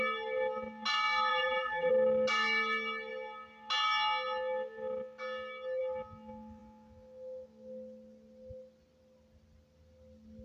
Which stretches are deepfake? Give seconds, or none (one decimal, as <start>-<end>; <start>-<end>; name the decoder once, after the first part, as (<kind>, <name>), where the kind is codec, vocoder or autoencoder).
1.3-1.9 (vocoder, BigVGAN v2)